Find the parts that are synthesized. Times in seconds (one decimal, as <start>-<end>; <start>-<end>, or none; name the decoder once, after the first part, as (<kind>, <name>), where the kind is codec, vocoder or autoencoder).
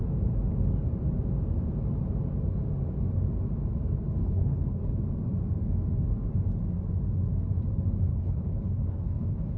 4.2-5.0 (codec, HILCodec); 8.1-9.6